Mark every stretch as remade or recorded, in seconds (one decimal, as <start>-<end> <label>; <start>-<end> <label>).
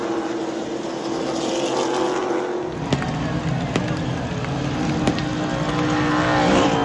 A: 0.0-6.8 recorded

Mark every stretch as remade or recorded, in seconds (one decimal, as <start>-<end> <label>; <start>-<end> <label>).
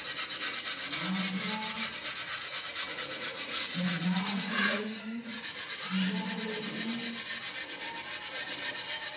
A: 0.0-2.3 recorded; 2.3-5.9 remade; 5.9-9.2 recorded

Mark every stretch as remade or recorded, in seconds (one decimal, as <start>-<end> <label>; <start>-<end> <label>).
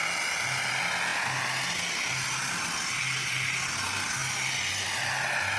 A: 0.0-5.6 recorded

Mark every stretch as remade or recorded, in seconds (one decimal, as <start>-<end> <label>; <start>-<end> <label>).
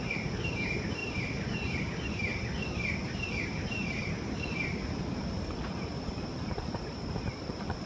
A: 0.0-2.3 remade; 2.3-3.4 recorded; 3.4-7.9 remade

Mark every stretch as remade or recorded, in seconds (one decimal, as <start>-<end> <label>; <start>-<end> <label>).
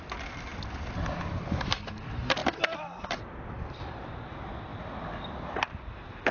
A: 0.0-0.5 recorded; 0.5-1.9 remade; 1.9-2.4 recorded; 2.4-4.3 remade; 4.3-6.3 recorded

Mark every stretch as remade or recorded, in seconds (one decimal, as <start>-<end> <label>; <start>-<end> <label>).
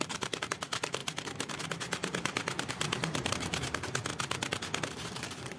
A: 0.0-4.1 remade; 4.1-4.9 recorded; 4.9-5.6 remade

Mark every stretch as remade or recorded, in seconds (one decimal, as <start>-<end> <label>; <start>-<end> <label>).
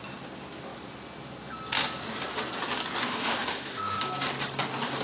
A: 0.0-3.0 recorded; 3.0-4.0 remade; 4.0-5.0 recorded